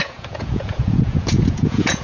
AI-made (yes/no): yes